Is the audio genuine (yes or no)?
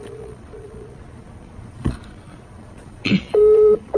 no